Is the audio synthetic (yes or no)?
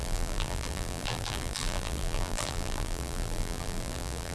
yes